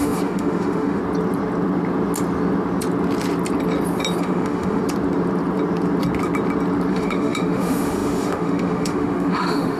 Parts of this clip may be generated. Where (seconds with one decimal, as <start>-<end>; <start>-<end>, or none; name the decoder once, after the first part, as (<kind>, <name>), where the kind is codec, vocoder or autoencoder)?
0.0-1.0 (autoencoder, DAC-VAE); 4.2-4.8; 6.9-9.8